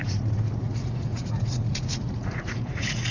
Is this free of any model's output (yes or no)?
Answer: no